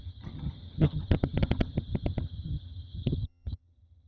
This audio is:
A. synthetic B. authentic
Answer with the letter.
A